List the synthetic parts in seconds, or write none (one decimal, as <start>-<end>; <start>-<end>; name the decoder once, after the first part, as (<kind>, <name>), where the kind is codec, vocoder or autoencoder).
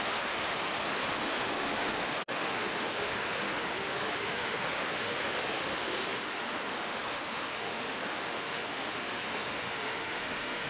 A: 0.0-10.7 (autoencoder, DAC-VAE)